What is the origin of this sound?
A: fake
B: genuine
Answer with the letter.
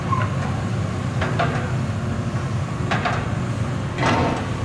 B